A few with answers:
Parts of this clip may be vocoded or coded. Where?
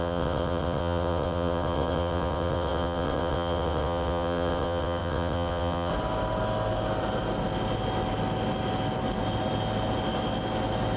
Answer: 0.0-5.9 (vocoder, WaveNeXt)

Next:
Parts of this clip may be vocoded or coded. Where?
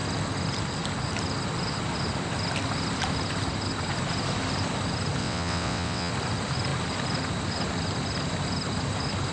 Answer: 5.2-6.1 (vocoder, WaveNeXt)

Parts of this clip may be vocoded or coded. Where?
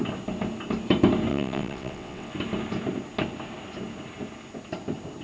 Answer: 1.3-2.3 (vocoder, WaveNeXt)